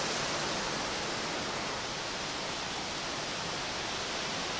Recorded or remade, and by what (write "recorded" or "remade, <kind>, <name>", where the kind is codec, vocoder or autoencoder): recorded